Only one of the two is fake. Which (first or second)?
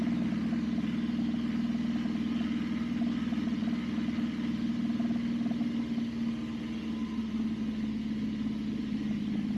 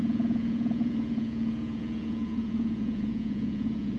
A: second